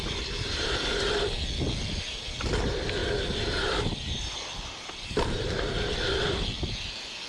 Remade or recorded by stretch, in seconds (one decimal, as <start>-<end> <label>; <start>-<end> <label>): 0.0-3.0 remade; 3.0-3.8 recorded; 3.8-7.3 remade